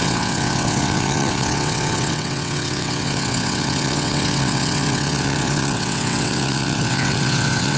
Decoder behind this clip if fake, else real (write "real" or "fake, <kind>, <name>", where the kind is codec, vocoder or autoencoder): fake, vocoder, WaveNeXt